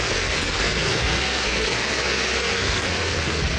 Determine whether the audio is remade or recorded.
remade